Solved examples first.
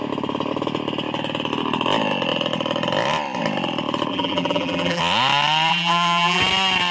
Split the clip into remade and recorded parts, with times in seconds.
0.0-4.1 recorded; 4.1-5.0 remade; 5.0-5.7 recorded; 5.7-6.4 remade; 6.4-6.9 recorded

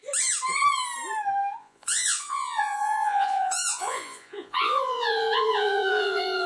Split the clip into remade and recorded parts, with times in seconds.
0.0-1.6 recorded; 1.6-6.5 remade

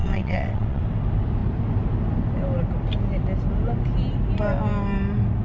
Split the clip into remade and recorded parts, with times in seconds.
0.0-0.8 remade; 0.8-5.4 recorded

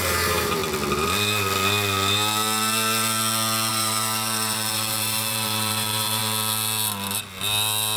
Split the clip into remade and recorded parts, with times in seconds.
0.0-0.6 remade; 0.6-3.7 recorded; 3.7-6.2 remade; 6.2-8.0 recorded

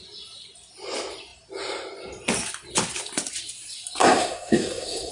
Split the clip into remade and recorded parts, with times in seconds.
0.0-4.0 recorded; 4.0-5.1 remade